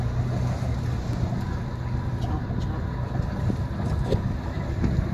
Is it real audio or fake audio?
real